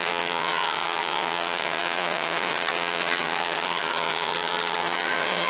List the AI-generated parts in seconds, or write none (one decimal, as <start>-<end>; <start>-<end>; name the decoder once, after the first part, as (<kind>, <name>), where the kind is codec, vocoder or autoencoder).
0.0-5.5 (vocoder, HiFi-GAN)